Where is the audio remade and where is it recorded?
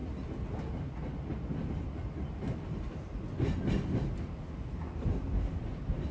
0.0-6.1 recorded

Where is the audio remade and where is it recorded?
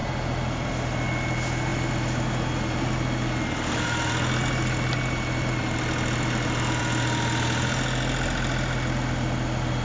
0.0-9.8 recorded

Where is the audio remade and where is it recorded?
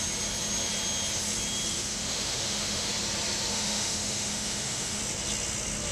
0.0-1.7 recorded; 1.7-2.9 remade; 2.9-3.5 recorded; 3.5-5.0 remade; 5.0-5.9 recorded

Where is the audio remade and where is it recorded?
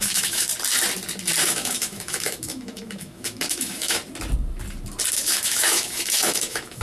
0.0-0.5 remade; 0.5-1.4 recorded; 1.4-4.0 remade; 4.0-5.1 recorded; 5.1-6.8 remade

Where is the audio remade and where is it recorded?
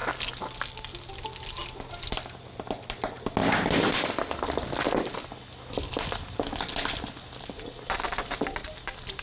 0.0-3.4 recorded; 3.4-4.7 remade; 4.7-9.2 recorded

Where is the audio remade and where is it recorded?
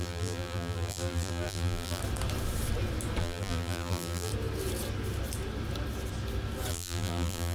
0.0-2.0 remade; 2.0-3.2 recorded; 3.2-4.3 remade; 4.3-6.7 recorded; 6.7-7.5 remade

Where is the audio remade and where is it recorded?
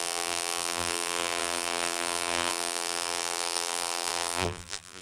0.0-5.0 remade